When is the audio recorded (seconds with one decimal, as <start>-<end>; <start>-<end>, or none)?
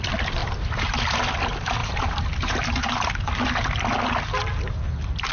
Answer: 0.0-0.4; 1.0-1.8; 3.0-5.3